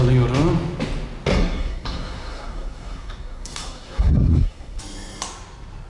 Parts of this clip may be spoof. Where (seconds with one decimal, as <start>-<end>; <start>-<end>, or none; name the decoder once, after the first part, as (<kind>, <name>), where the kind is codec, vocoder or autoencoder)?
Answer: 1.3-4.8 (codec, SNAC)